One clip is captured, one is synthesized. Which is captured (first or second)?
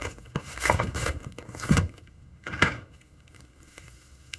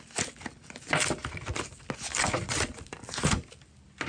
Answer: second